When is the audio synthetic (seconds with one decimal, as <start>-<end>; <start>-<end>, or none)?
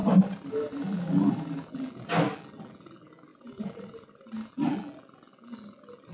0.0-1.7; 3.3-4.5